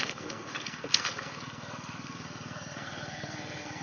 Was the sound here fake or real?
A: fake